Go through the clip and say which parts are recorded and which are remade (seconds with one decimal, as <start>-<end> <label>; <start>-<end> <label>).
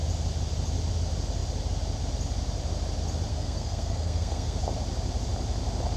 0.0-3.3 recorded; 3.3-4.6 remade; 4.6-6.0 recorded